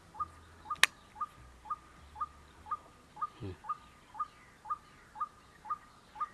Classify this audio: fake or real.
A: real